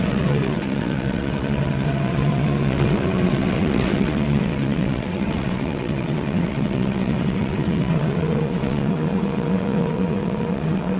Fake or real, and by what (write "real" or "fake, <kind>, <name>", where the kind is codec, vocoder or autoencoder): fake, vocoder, WaveNeXt